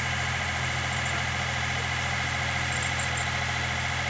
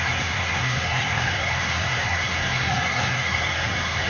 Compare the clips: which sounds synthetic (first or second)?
second